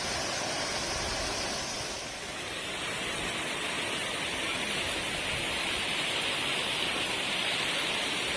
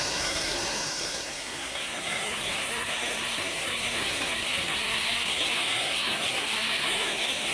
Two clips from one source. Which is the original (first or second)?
first